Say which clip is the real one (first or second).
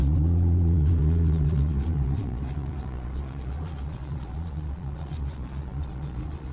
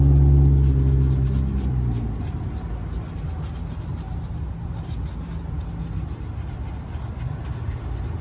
second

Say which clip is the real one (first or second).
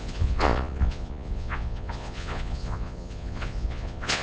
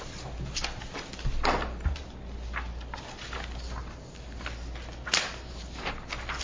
second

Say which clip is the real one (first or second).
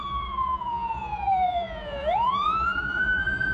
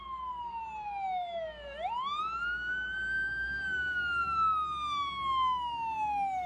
second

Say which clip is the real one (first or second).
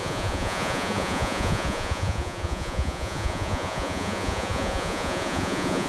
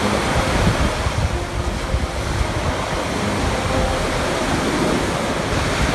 second